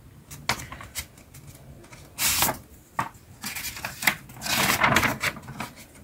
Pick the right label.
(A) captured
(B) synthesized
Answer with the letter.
A